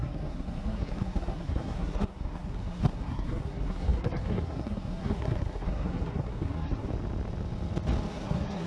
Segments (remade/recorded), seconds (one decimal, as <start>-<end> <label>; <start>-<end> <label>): 0.0-6.9 remade; 6.9-8.1 recorded; 8.1-8.7 remade